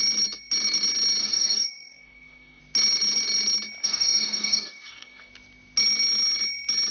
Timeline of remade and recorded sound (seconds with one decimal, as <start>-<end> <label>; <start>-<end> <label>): 0.0-1.2 recorded; 1.2-2.6 remade; 2.6-3.8 recorded; 3.8-5.3 remade; 5.3-6.9 recorded